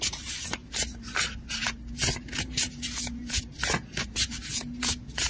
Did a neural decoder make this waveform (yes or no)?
yes